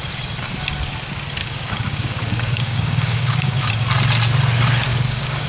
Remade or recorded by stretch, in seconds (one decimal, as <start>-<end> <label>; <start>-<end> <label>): 0.0-1.4 recorded; 1.4-3.7 remade; 3.7-4.9 recorded; 4.9-5.5 remade